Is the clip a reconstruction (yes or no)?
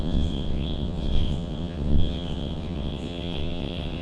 yes